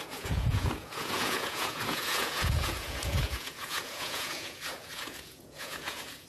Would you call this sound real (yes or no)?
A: no